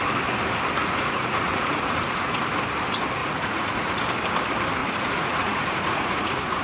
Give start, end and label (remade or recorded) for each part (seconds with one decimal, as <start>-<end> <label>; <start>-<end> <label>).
0.0-0.8 recorded; 0.8-2.4 remade; 2.4-3.2 recorded; 3.2-4.0 remade; 4.0-4.8 recorded; 4.8-6.6 remade